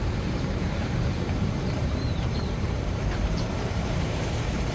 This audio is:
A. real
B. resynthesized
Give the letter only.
B